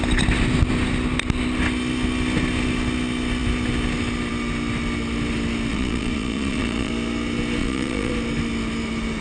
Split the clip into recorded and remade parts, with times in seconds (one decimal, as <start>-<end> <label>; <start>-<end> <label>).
0.0-5.7 recorded; 5.7-6.9 remade; 6.9-7.6 recorded; 7.6-8.1 remade; 8.1-9.2 recorded